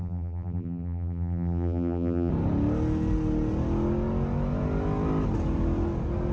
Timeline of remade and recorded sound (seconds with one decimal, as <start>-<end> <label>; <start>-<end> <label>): 0.0-2.3 remade; 2.3-6.3 recorded